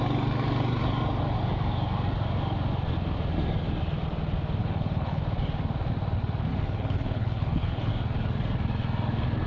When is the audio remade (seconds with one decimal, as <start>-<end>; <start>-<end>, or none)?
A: 4.6-5.2; 6.5-7.9

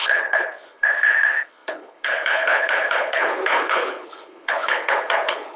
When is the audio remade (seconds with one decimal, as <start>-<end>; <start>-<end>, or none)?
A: 0.0-5.6